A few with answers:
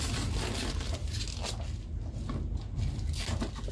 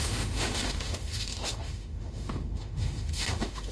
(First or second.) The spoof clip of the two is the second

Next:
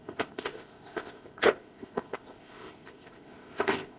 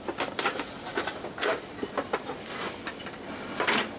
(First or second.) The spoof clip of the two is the first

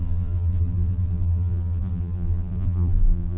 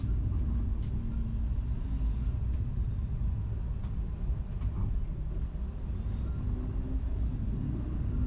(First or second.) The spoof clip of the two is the first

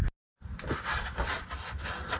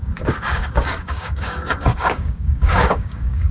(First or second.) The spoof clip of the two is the second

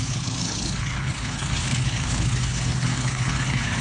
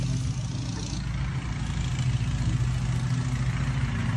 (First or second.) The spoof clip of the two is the first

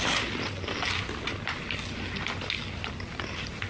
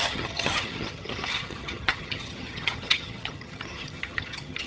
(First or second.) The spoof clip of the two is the second